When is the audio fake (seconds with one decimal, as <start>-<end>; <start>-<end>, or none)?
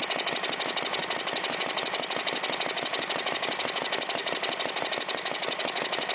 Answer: 4.2-4.9